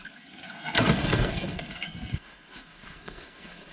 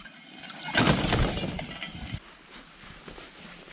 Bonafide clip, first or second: second